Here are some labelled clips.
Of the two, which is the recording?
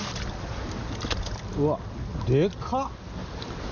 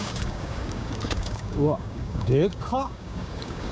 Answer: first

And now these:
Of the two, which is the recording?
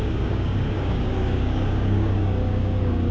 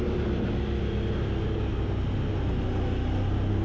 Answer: second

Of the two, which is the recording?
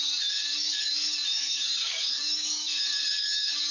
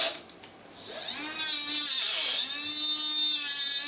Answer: second